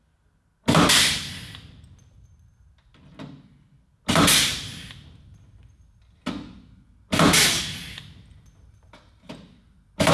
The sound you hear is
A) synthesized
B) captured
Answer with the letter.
B